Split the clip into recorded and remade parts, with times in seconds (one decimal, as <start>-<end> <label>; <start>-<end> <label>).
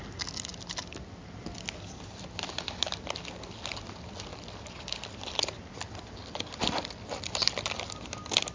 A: 0.0-8.5 recorded